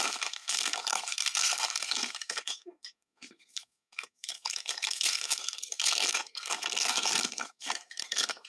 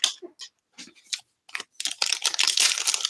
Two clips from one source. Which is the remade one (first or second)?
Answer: first